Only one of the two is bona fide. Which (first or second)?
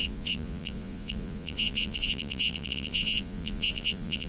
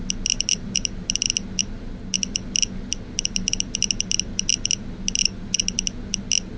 second